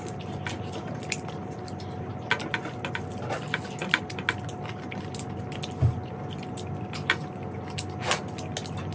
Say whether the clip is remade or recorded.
recorded